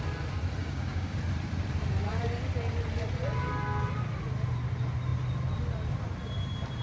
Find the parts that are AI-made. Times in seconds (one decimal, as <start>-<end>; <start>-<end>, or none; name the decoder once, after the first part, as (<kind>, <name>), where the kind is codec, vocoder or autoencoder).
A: 0.6-1.2 (codec, DAC)